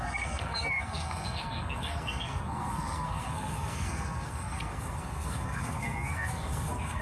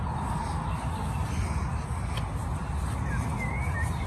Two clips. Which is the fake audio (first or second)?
first